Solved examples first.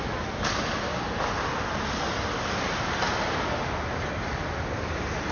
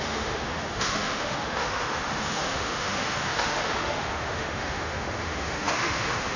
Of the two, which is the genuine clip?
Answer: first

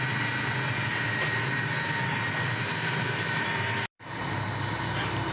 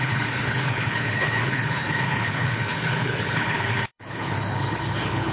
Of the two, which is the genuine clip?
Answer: first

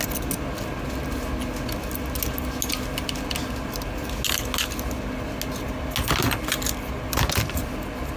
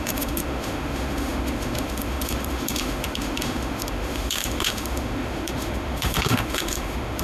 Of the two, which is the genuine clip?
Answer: first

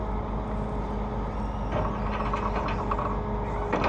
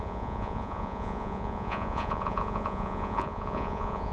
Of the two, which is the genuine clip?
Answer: first